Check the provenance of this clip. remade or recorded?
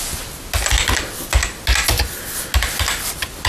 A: recorded